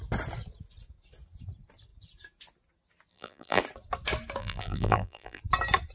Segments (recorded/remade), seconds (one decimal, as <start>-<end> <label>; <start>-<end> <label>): 0.0-3.1 recorded; 3.1-3.6 remade; 3.6-4.4 recorded; 4.4-5.4 remade; 5.4-5.9 recorded